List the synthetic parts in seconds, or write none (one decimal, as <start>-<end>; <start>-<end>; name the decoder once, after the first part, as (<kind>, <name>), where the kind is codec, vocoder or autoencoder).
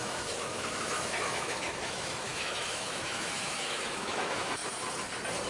0.0-4.6 (autoencoder, DAC-VAE)